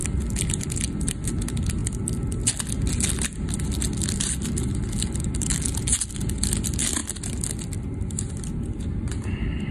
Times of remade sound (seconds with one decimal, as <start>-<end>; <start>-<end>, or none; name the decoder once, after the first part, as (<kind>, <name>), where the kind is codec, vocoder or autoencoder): none